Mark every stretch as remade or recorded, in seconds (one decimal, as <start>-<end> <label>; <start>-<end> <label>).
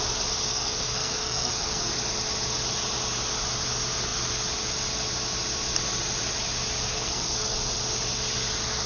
0.0-0.5 recorded; 0.5-1.9 remade; 1.9-6.9 recorded; 6.9-7.5 remade; 7.5-8.9 recorded